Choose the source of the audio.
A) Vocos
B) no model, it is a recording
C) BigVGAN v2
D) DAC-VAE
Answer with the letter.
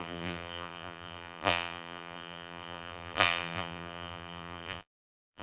C